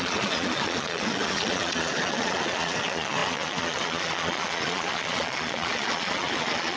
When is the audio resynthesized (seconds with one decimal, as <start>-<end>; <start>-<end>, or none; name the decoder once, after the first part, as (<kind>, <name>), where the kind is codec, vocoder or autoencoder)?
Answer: 0.0-6.8 (vocoder, Vocos)